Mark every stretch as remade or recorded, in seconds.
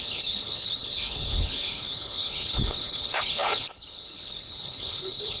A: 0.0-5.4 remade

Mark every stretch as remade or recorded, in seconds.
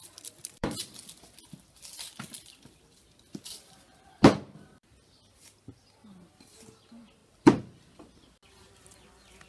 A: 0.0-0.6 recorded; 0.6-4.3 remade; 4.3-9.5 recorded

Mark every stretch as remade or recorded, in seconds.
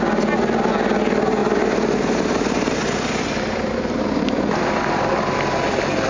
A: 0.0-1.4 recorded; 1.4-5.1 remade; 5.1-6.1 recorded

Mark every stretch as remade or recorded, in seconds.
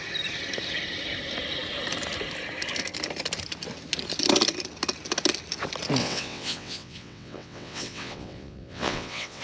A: 0.0-6.0 recorded; 6.0-9.4 remade